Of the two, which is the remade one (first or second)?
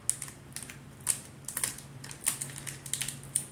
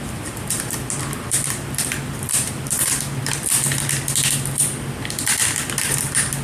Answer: second